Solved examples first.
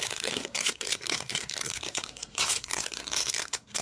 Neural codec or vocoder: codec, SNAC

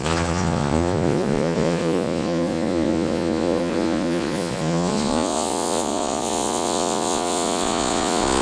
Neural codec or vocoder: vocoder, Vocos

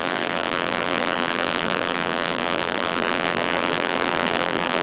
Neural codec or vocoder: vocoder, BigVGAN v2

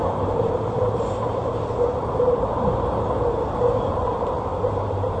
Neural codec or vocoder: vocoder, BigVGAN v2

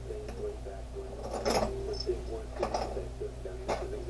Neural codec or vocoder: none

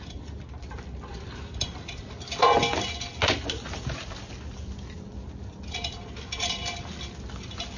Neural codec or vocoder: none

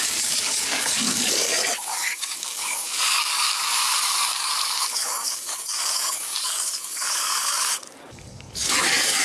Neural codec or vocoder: codec, DAC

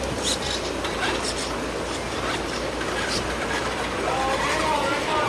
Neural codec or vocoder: none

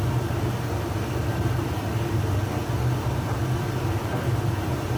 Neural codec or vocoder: vocoder, BigVGAN v2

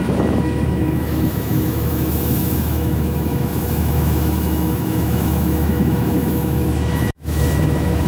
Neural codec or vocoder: autoencoder, DAC-VAE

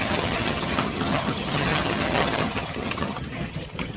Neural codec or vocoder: vocoder, HiFi-GAN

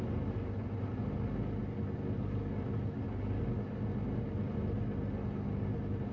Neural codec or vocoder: none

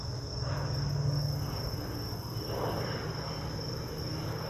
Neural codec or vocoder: none